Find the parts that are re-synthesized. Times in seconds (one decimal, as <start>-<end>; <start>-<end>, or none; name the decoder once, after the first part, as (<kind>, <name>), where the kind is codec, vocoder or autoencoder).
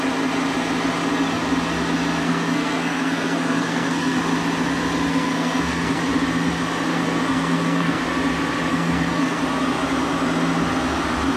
2.2-4.2 (codec, SNAC); 5.1-6.0; 6.9-8.0; 8.7-9.4